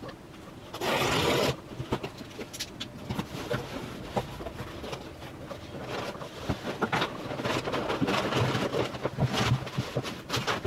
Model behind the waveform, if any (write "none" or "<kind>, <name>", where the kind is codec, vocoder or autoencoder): none